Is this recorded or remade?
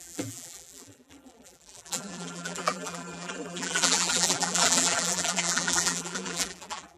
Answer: remade